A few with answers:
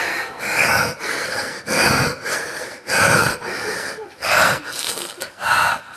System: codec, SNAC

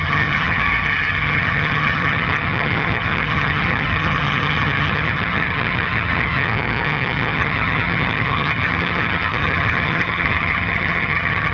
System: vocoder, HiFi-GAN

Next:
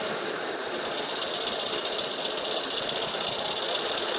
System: none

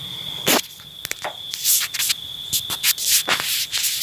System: none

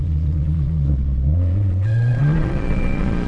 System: vocoder, Vocos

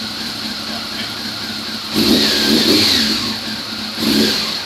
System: none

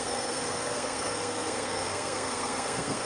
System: codec, SNAC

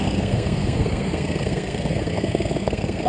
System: codec, SNAC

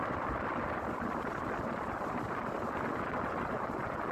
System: none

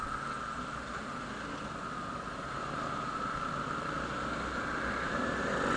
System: none